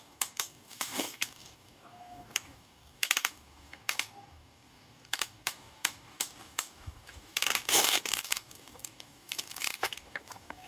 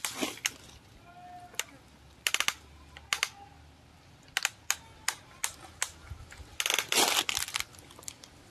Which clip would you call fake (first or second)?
first